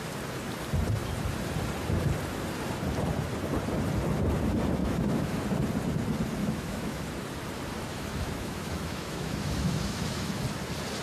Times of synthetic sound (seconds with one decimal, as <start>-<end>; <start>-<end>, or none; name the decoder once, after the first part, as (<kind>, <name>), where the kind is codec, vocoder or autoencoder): 4.8-5.4 (autoencoder, DAC-VAE); 6.4-7.1; 7.9-10.4